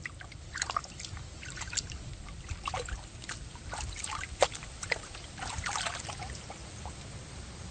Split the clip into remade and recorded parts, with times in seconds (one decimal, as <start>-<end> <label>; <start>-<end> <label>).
0.0-7.7 recorded